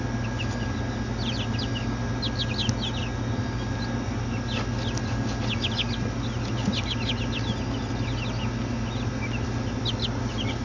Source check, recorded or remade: recorded